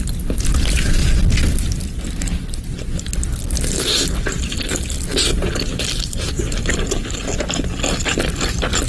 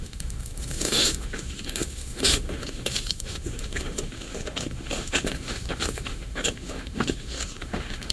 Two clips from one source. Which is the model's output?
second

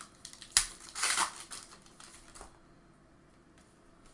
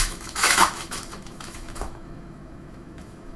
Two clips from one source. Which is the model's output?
second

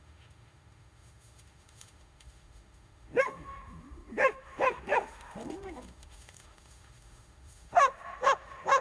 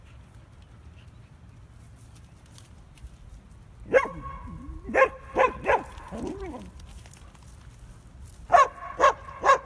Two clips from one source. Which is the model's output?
first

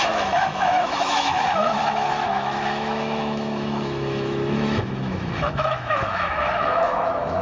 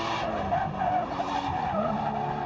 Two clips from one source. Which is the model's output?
first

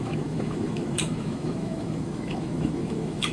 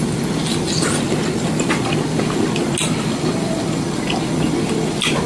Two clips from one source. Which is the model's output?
first